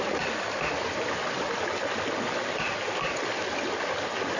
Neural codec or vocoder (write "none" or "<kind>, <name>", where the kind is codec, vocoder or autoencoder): none